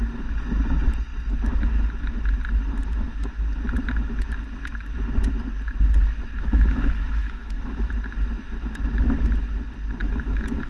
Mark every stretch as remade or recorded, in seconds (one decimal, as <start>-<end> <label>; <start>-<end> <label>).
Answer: 0.0-6.3 recorded; 6.3-7.9 remade; 7.9-10.0 recorded; 10.0-10.7 remade